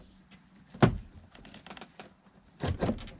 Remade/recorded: recorded